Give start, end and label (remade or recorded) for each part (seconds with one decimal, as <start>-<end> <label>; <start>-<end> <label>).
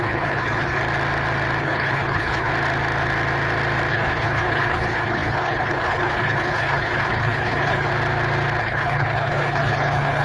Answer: 0.0-0.8 remade; 0.8-1.6 recorded; 1.6-2.5 remade; 2.5-3.9 recorded; 3.9-7.9 remade; 7.9-8.6 recorded; 8.6-10.2 remade